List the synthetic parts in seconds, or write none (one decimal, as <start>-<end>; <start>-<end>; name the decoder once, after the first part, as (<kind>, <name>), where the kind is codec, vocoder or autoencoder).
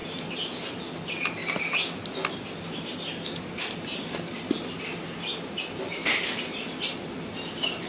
6.0-6.8 (vocoder, BigVGAN v2)